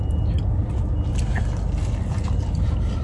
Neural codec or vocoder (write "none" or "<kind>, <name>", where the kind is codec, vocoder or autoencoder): none